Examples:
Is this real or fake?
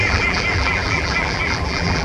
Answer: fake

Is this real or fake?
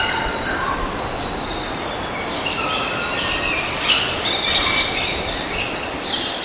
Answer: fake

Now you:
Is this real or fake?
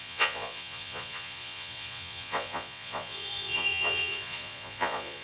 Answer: fake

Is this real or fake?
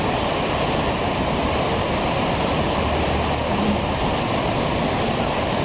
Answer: real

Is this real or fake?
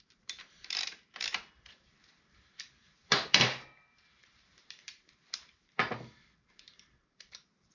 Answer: fake